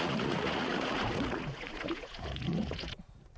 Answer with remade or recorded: remade